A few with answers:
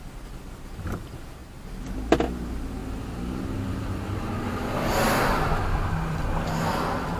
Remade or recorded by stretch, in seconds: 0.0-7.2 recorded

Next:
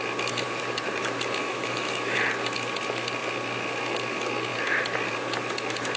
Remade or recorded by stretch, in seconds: 0.0-1.4 recorded; 1.4-2.2 remade; 2.2-6.0 recorded

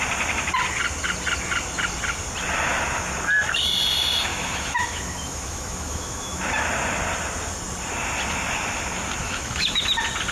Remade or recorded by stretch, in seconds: 0.0-4.3 recorded; 4.3-6.4 remade; 6.4-9.2 recorded; 9.2-9.8 remade; 9.8-10.3 recorded

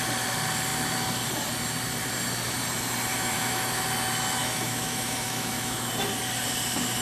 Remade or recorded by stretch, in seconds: 0.0-3.1 recorded; 3.1-3.8 remade; 3.8-4.4 recorded; 4.4-5.9 remade; 5.9-7.0 recorded

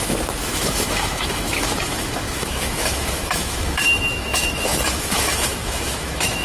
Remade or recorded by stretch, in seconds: 0.0-6.4 remade

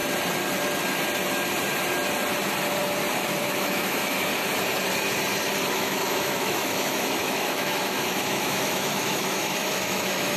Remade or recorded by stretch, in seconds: 0.0-3.4 recorded; 3.4-4.3 remade; 4.3-5.7 recorded; 5.7-10.4 remade

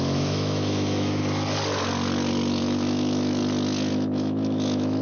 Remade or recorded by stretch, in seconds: 0.0-1.2 remade; 1.2-2.6 recorded; 2.6-3.4 remade; 3.4-3.9 recorded; 3.9-5.0 remade

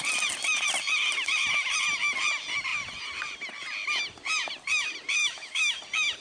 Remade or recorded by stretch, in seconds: 0.0-5.2 recorded; 5.2-5.8 remade; 5.8-6.2 recorded